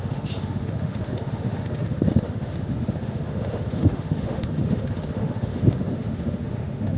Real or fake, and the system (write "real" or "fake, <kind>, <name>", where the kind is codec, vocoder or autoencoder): fake, autoencoder, DAC-VAE